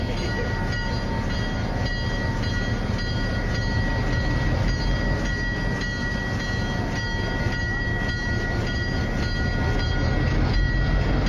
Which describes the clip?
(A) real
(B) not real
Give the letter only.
A